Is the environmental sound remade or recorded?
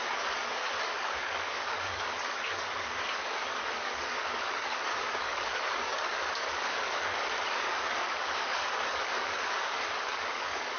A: remade